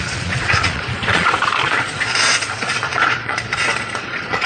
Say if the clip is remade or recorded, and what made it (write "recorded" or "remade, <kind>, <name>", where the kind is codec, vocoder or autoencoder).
remade, vocoder, Vocos